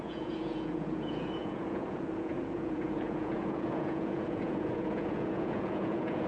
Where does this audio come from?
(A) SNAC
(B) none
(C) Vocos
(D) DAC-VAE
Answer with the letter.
C